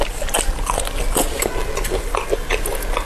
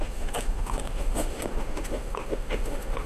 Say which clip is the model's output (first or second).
second